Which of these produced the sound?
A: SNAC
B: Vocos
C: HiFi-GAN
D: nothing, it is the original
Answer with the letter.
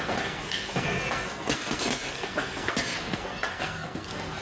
A